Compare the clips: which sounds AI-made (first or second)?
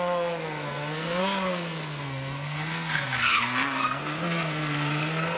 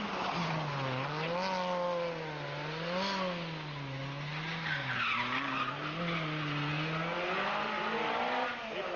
first